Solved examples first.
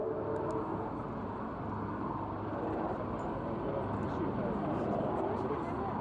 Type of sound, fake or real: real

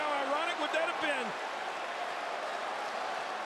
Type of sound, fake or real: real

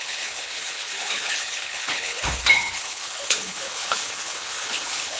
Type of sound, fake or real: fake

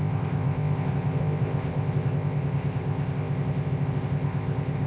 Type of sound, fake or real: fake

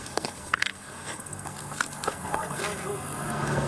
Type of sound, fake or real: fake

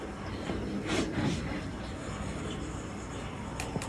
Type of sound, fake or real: real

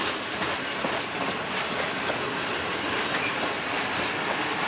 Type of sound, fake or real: real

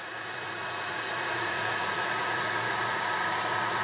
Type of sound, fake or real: fake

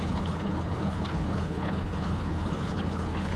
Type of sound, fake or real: fake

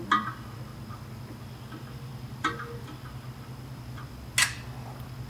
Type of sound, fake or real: real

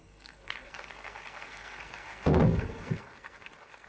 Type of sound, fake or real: fake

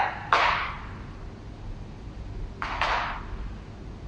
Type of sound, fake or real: real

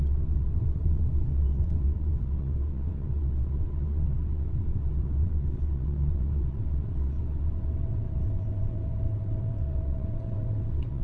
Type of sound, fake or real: fake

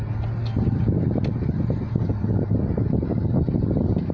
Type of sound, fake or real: real